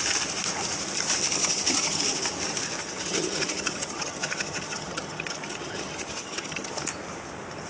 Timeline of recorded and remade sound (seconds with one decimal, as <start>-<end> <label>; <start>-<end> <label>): 0.0-1.4 recorded; 1.4-2.0 remade; 2.0-2.8 recorded; 2.8-6.8 remade; 6.8-7.7 recorded